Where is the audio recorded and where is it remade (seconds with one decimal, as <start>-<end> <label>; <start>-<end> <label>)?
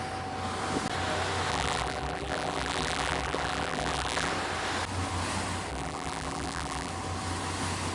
0.0-1.5 recorded; 1.5-4.3 remade; 4.3-5.7 recorded; 5.7-6.9 remade; 6.9-7.9 recorded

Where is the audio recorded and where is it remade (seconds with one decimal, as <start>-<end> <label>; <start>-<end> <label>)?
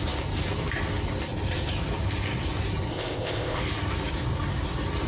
0.0-2.9 recorded; 2.9-3.6 remade; 3.6-5.1 recorded